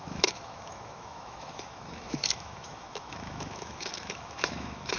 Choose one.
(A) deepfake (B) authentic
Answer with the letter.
A